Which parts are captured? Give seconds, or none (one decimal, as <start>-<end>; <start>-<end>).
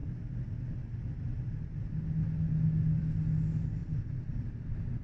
0.0-5.0